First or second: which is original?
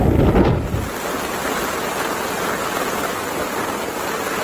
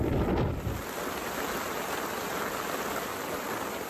first